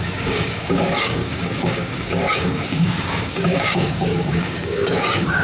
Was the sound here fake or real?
fake